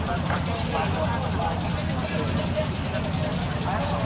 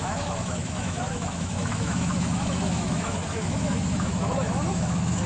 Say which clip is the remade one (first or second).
second